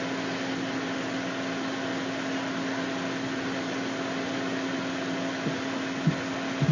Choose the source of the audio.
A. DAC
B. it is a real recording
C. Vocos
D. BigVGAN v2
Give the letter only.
B